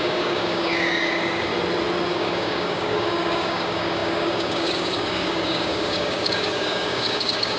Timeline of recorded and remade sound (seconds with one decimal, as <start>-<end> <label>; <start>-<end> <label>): 0.0-1.5 remade; 1.5-2.1 recorded; 2.1-7.6 remade